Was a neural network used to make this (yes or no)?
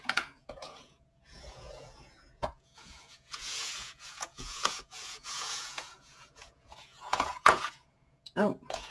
yes